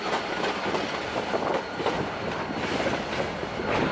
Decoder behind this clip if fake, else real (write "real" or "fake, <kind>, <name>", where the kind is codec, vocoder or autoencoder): real